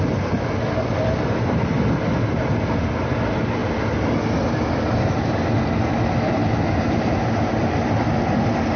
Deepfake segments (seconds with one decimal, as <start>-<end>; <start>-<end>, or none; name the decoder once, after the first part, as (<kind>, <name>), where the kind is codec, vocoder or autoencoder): none